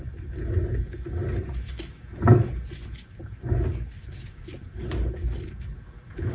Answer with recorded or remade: recorded